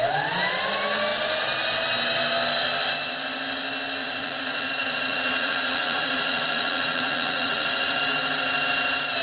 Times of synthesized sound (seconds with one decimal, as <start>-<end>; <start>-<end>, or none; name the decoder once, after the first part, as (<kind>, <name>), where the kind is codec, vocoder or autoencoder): 4.0-8.0 (vocoder, Vocos)